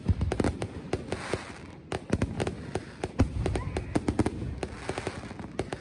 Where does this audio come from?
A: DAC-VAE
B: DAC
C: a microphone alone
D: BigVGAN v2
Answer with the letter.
C